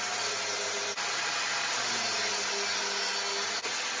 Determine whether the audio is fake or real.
real